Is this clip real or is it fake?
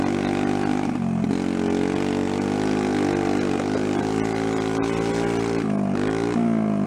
real